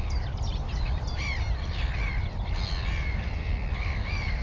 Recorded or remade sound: recorded